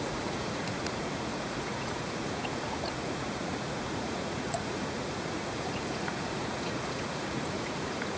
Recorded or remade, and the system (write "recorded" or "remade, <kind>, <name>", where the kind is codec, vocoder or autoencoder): remade, vocoder, Vocos